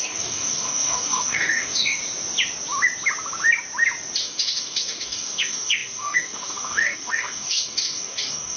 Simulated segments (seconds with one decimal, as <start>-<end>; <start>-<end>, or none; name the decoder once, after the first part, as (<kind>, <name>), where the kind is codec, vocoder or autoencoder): 0.0-2.0 (codec, DAC); 4.2-8.6